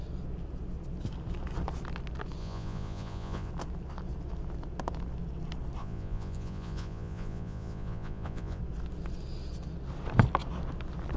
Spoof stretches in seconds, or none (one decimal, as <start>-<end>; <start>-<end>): 2.4-3.5; 5.8-8.6